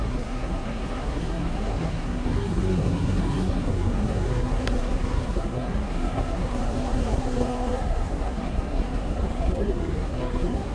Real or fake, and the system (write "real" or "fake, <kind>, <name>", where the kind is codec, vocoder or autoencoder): fake, codec, SNAC